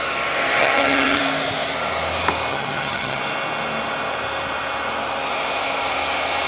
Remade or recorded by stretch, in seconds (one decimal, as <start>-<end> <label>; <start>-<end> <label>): 0.0-0.6 recorded; 0.6-1.2 remade; 1.2-2.5 recorded; 2.5-3.2 remade; 3.2-6.5 recorded